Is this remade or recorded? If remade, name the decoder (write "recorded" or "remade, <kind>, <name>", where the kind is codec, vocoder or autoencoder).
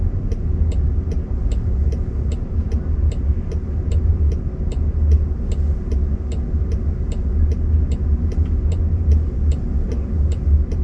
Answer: recorded